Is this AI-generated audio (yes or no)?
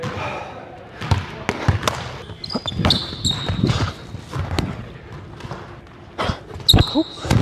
no